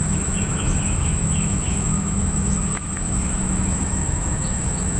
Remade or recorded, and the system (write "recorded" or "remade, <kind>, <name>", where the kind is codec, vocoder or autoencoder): remade, autoencoder, DAC-VAE